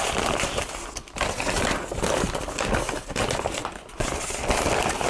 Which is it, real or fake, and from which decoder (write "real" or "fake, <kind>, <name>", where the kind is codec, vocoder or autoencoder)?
real